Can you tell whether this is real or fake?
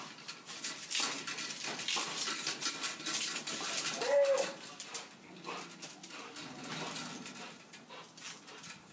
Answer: real